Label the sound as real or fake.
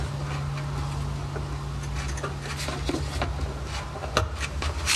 real